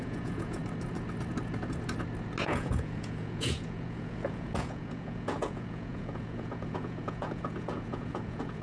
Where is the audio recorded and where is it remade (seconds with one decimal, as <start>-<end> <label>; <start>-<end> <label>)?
0.0-0.6 remade; 0.6-2.4 recorded; 2.4-8.6 remade